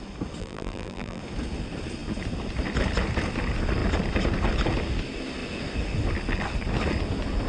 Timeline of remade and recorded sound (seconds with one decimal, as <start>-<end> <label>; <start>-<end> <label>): 0.0-0.4 recorded; 0.4-1.2 remade; 1.2-7.5 recorded